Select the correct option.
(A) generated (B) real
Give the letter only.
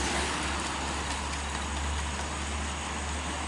B